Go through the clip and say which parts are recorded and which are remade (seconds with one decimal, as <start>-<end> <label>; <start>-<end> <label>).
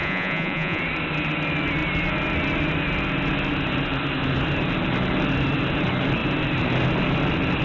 0.0-0.8 remade; 0.8-7.6 recorded